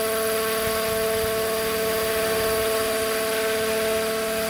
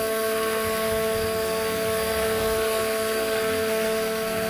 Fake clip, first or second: second